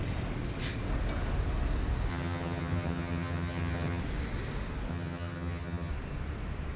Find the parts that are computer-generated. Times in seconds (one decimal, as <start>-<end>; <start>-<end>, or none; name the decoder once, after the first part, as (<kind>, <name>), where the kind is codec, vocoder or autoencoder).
2.1-4.0 (vocoder, HiFi-GAN); 4.9-5.9